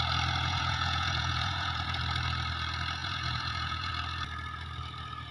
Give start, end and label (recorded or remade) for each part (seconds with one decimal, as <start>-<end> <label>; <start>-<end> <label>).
0.0-0.4 recorded; 0.4-2.0 remade; 2.0-3.0 recorded; 3.0-3.9 remade; 3.9-5.3 recorded